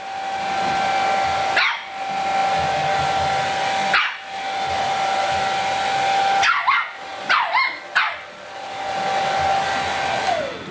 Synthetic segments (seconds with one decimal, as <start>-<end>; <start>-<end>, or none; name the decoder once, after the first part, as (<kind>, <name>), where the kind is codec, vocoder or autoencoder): none